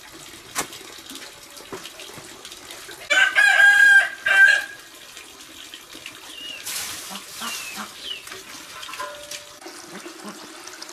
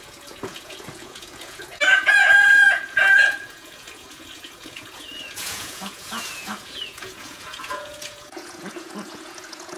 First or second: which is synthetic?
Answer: second